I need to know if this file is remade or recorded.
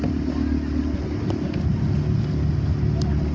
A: recorded